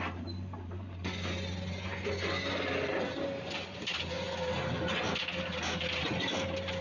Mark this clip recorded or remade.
recorded